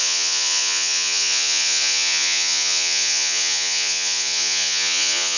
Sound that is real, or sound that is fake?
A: fake